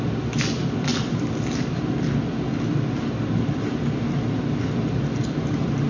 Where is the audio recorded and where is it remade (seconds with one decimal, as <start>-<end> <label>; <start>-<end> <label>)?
0.0-5.9 recorded